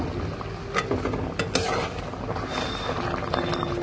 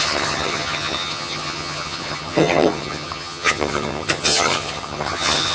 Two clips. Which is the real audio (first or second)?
first